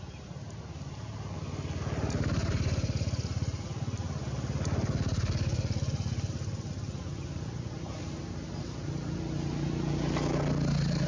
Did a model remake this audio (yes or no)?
no